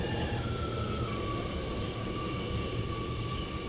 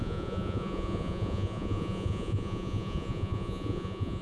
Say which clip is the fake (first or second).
second